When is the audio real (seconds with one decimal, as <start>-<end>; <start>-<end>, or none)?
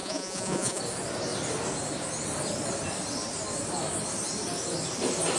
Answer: 0.8-5.4